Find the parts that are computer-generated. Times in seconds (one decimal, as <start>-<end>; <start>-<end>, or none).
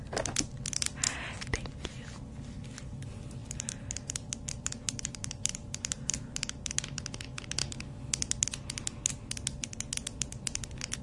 3.4-7.0